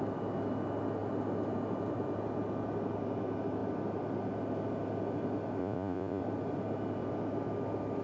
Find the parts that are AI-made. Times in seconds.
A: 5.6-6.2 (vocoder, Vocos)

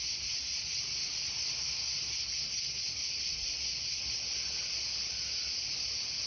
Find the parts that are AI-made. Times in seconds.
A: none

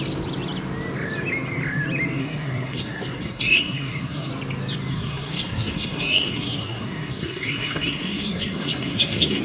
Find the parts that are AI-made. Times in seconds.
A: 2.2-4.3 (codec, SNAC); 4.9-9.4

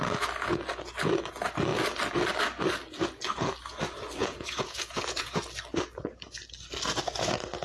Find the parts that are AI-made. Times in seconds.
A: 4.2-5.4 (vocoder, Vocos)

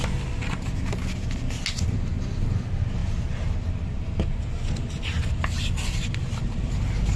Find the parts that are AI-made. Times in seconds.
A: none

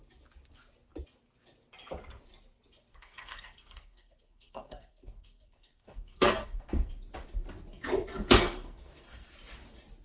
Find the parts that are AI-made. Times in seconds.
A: 2.9-6.9 (codec, SNAC); 8.1-9.3

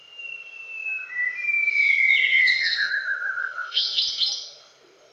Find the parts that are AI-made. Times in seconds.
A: 2.3-2.9 (codec, SNAC); 3.4-4.0